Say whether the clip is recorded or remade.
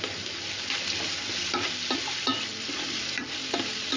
remade